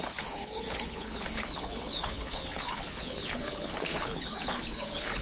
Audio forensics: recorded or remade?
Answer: remade